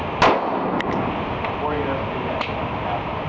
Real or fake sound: real